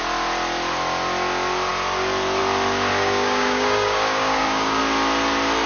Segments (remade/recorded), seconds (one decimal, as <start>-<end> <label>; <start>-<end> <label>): 0.0-2.9 recorded; 2.9-4.8 remade; 4.8-5.7 recorded